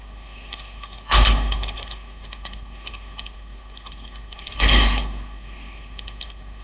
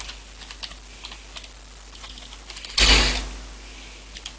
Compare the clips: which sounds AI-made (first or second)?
first